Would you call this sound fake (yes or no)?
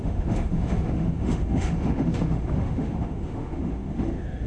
yes